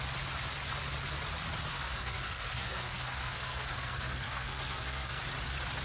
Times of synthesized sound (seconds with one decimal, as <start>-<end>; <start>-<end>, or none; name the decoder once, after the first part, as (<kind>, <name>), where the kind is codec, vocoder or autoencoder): 1.7-5.2 (codec, SNAC)